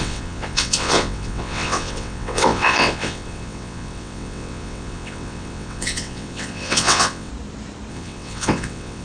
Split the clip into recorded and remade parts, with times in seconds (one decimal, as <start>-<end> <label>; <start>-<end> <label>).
0.0-7.3 remade; 7.3-7.9 recorded; 7.9-9.0 remade